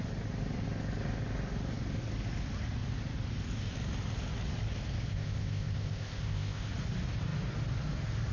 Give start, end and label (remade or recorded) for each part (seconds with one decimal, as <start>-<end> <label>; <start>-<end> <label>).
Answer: 0.0-5.1 recorded; 5.1-6.7 remade; 6.7-8.3 recorded